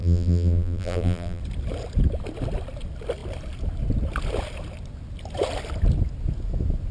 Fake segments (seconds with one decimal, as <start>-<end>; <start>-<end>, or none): 0.0-1.4